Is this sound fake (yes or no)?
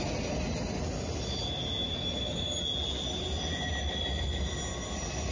no